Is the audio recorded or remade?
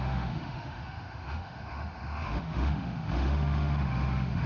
remade